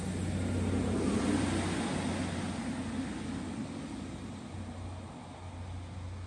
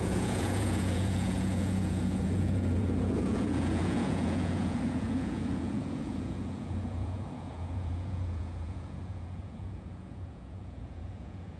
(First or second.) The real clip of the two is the first